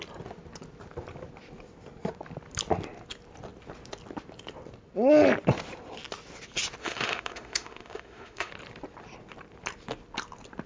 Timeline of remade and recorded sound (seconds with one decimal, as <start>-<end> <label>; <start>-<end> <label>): 0.0-6.8 recorded; 6.8-8.5 remade; 8.5-10.7 recorded